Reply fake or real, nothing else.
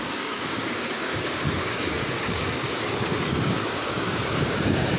fake